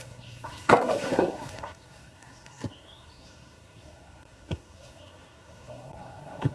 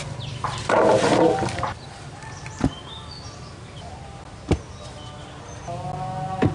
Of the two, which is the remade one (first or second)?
first